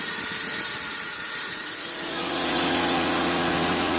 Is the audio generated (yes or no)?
yes